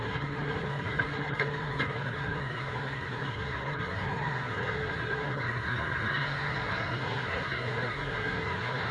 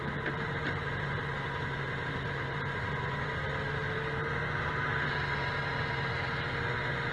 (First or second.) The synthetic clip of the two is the first